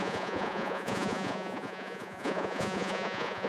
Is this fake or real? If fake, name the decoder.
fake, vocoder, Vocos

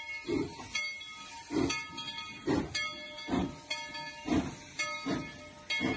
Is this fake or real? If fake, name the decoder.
real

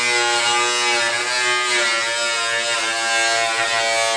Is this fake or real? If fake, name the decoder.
real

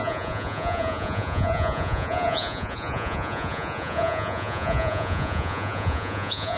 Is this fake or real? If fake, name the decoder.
fake, vocoder, Vocos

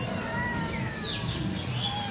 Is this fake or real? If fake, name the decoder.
real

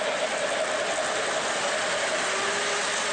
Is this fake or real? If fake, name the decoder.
real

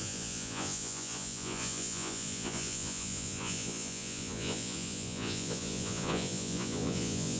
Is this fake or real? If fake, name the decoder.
fake, vocoder, Vocos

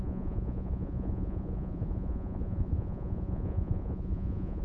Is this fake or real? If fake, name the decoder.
fake, vocoder, Vocos